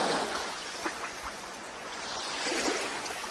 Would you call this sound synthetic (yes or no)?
yes